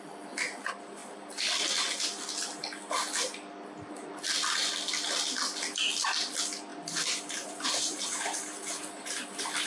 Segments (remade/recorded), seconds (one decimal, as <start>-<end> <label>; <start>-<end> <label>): 0.0-6.7 recorded; 6.7-9.7 remade